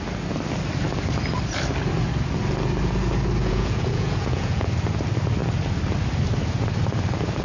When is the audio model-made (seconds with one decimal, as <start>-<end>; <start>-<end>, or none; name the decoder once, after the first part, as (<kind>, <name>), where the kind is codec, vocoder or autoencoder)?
3.4-4.7 (vocoder, Vocos)